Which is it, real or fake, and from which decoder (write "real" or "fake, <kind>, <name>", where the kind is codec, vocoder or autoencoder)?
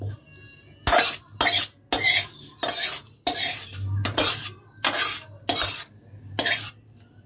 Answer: real